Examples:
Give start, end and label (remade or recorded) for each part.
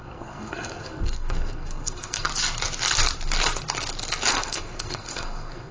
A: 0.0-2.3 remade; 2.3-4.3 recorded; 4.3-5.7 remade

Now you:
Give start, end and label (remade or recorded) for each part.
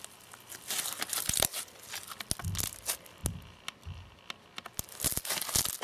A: 0.0-5.8 recorded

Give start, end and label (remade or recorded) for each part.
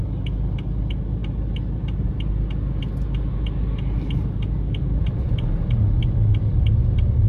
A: 0.0-7.3 recorded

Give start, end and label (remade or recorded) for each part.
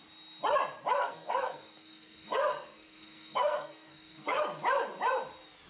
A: 0.0-1.0 recorded; 1.0-4.4 remade; 4.4-5.7 recorded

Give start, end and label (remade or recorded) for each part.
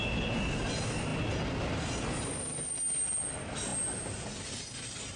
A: 0.0-5.2 recorded